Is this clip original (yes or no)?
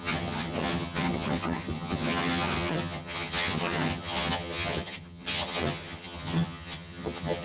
no